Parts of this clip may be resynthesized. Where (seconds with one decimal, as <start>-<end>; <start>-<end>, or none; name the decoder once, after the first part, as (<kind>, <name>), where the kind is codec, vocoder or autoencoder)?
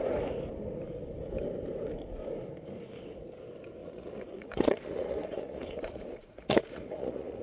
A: 3.8-7.4 (vocoder, Vocos)